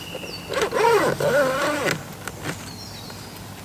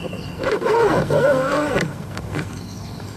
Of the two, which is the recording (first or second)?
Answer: first